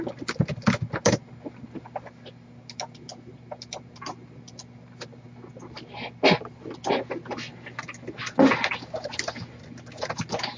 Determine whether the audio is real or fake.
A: real